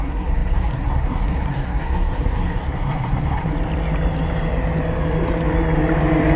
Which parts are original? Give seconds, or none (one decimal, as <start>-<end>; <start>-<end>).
3.5-6.4